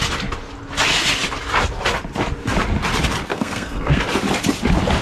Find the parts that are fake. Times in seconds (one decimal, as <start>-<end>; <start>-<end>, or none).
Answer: 3.3-4.0